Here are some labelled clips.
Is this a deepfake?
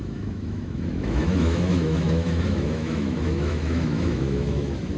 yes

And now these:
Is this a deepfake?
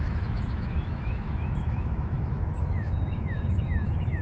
yes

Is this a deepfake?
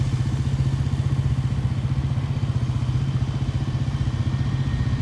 no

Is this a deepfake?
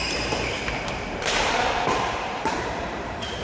yes